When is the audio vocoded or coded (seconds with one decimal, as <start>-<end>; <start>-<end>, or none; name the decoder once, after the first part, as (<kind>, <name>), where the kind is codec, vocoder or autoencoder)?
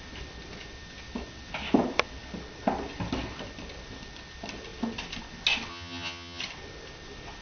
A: 5.7-6.4 (vocoder, HiFi-GAN)